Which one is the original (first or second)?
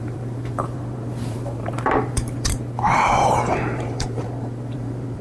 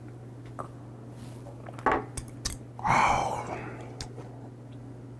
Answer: second